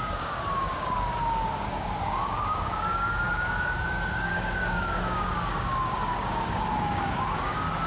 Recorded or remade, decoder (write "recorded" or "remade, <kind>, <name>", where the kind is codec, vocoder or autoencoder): remade, codec, DAC